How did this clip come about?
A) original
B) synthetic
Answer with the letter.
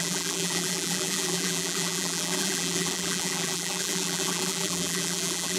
B